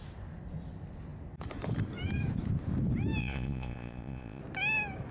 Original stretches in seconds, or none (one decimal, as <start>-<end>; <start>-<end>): 0.0-3.2; 4.4-5.1